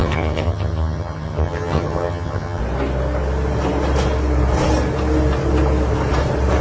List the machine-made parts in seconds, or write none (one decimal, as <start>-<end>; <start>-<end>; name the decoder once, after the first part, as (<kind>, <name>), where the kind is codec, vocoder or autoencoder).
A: 0.0-2.6 (vocoder, HiFi-GAN)